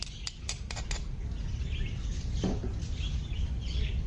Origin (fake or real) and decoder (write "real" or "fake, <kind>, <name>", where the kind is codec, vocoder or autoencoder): real